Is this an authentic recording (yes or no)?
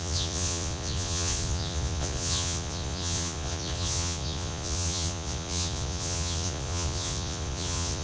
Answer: no